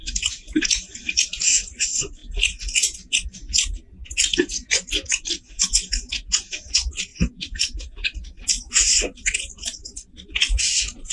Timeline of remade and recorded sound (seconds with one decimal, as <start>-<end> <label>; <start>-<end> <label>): 0.0-11.1 recorded